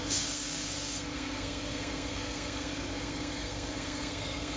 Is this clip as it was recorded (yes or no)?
no